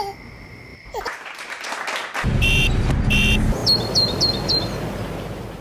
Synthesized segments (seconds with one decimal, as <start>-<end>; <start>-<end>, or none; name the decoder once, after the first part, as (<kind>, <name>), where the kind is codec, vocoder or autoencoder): 0.7-1.7 (vocoder, BigVGAN v2)